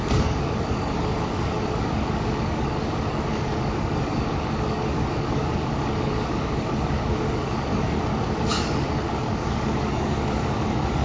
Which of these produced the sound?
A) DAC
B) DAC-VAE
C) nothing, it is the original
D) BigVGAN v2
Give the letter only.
A